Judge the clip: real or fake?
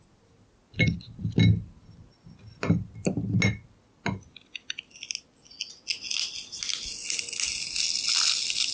real